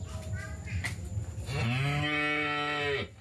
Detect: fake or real real